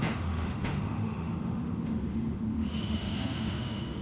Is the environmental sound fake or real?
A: fake